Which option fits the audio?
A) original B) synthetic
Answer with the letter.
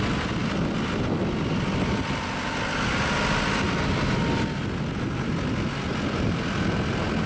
A